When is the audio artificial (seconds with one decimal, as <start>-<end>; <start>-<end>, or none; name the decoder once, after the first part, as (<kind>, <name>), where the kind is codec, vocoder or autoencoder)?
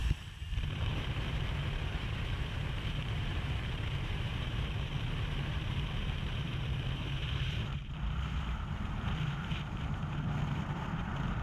0.0-11.4 (vocoder, BigVGAN v2)